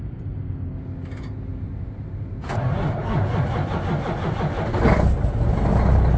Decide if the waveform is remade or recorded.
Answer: recorded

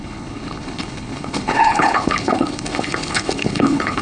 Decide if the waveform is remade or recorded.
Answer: remade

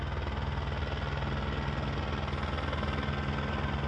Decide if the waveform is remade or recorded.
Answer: recorded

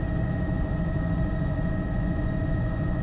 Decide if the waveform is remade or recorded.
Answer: remade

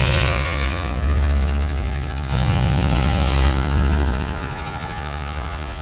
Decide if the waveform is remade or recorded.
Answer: remade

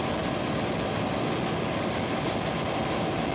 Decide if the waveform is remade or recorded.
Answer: recorded